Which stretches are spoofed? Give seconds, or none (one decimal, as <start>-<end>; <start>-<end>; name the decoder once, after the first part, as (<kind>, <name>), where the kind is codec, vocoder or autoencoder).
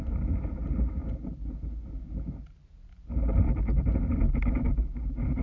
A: none